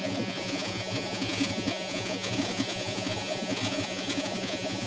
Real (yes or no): no